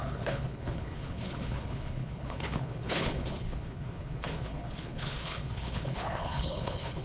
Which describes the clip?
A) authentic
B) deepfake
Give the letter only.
B